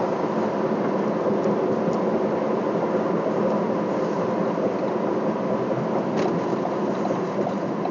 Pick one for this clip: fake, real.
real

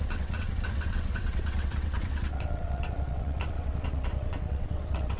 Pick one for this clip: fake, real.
fake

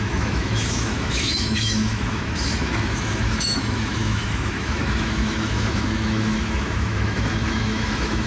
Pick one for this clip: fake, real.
fake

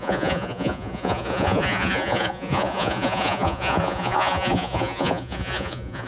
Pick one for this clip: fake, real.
fake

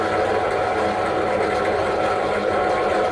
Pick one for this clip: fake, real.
real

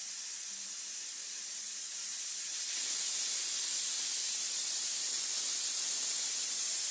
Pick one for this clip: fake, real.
fake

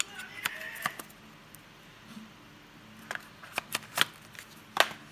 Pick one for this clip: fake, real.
real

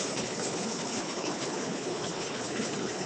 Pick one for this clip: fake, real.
fake